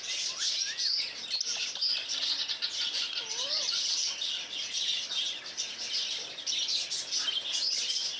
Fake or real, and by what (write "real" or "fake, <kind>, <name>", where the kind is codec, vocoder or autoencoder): real